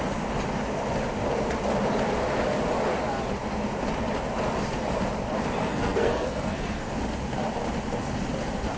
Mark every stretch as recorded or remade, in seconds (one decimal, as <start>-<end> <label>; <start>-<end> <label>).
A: 0.0-5.6 recorded; 5.6-6.9 remade; 6.9-8.8 recorded

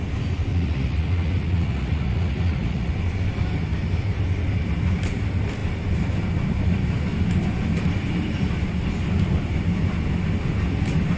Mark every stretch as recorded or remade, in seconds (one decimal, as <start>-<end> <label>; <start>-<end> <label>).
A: 0.0-0.5 recorded; 0.5-2.9 remade; 2.9-11.2 recorded

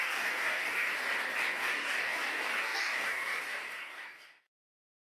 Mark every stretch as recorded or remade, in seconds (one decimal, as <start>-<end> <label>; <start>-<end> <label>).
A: 0.0-0.9 remade; 0.9-1.5 recorded; 1.5-5.2 remade

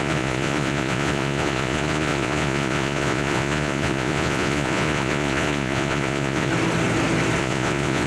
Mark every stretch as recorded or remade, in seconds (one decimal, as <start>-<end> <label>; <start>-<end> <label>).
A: 0.0-6.5 remade; 6.5-7.4 recorded; 7.4-8.1 remade

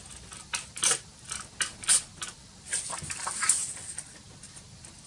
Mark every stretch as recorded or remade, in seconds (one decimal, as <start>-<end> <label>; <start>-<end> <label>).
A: 0.0-5.1 recorded